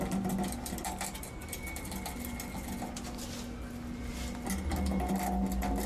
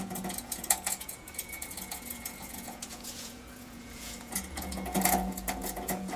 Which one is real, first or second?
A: first